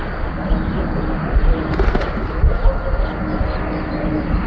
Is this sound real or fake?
real